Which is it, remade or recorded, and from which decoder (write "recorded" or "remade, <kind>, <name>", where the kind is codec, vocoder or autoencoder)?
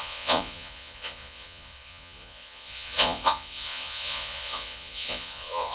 remade, vocoder, Vocos